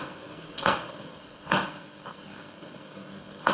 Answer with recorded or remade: remade